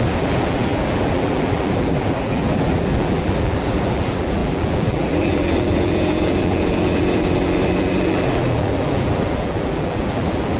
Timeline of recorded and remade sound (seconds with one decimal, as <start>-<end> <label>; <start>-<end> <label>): 0.0-10.6 remade